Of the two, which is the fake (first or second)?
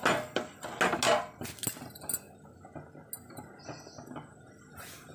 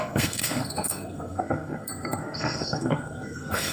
second